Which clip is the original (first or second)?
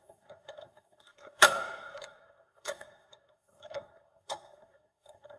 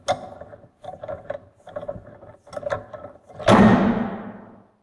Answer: second